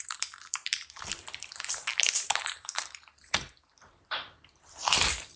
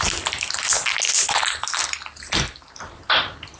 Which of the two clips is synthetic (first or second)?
first